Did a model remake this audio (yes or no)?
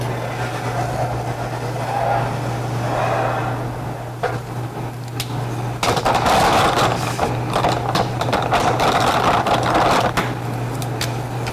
no